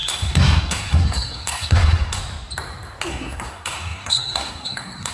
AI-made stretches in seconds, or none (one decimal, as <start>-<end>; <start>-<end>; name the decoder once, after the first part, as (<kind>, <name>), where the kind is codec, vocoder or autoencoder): 0.0-2.2 (codec, SNAC); 3.1-5.1